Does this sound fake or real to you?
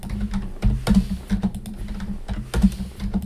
real